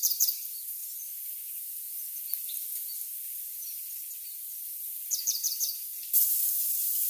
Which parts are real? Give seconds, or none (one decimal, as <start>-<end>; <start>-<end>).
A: 0.8-5.1